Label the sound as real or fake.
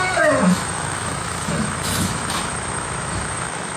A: fake